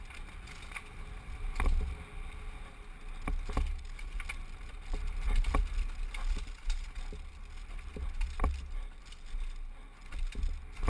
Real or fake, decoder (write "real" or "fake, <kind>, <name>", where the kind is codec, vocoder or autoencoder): real